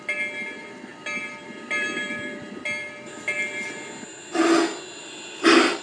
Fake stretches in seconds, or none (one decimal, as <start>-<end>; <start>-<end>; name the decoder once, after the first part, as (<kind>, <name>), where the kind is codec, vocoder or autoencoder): none